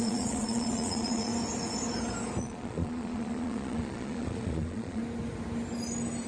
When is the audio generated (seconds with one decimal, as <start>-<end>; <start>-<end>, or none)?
0.0-1.3; 2.4-5.0